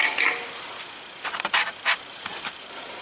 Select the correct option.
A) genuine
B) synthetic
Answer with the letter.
A